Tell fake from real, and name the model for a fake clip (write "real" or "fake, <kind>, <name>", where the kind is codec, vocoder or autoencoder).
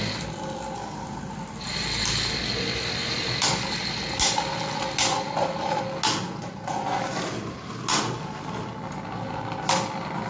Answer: real